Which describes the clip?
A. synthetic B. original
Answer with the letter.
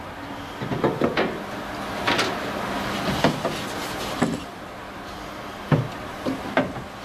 B